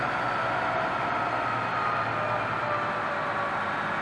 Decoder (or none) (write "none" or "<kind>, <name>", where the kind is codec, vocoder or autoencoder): none